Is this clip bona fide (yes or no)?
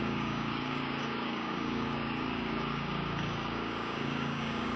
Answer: no